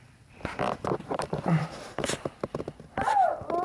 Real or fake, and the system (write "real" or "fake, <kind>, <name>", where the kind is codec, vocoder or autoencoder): fake, vocoder, BigVGAN v2